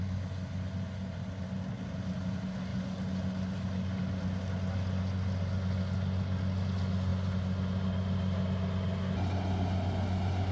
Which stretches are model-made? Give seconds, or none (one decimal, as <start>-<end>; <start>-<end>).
none